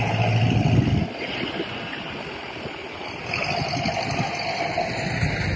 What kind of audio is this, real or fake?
real